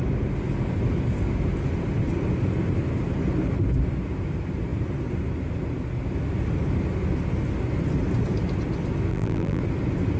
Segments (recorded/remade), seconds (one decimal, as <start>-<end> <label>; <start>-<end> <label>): 0.0-9.1 recorded; 9.1-9.6 remade; 9.6-10.2 recorded